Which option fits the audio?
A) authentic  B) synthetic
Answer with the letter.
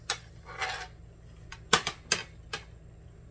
A